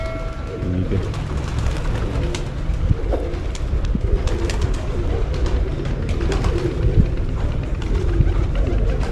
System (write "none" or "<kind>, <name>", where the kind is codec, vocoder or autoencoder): none